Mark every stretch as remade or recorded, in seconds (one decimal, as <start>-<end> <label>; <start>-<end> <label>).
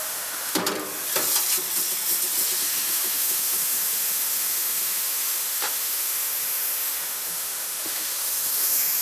0.0-0.6 remade; 0.6-2.6 recorded; 2.6-9.0 remade